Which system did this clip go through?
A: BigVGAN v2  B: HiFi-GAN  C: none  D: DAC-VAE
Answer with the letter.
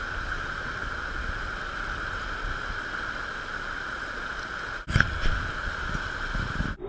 C